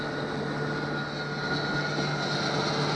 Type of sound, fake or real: real